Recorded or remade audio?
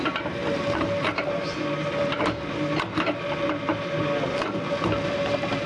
recorded